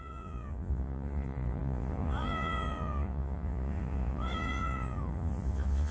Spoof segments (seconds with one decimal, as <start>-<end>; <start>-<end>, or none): 0.0-5.9